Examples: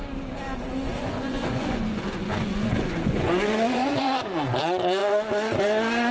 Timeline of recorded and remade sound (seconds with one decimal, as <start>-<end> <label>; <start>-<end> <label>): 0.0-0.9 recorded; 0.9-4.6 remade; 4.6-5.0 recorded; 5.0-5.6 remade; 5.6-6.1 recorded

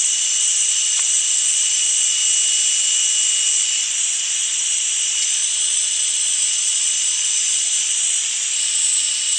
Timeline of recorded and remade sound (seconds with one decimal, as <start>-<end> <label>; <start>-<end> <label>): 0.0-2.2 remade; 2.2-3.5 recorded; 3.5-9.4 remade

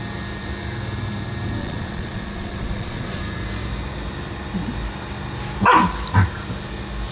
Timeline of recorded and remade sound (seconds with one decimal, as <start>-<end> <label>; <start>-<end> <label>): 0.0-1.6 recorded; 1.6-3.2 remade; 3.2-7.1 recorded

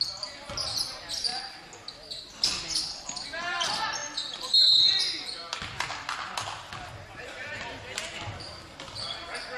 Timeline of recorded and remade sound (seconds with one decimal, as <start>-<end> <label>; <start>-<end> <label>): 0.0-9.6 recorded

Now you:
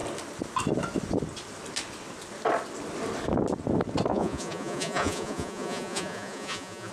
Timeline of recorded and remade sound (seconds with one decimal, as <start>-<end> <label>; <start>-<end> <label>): 0.0-4.1 recorded; 4.1-6.9 remade